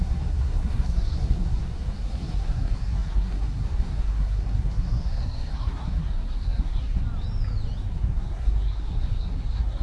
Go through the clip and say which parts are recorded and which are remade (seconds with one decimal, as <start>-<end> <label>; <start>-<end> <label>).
0.0-7.0 remade; 7.0-7.9 recorded; 7.9-9.8 remade